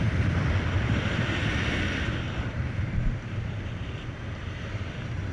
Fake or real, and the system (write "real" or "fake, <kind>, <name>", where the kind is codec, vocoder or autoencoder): fake, vocoder, BigVGAN v2